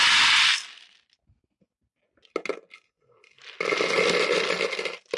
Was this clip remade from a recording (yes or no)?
no